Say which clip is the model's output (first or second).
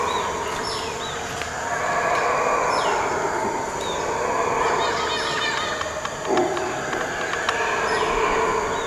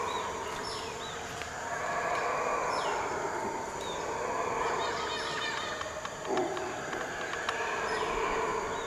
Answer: second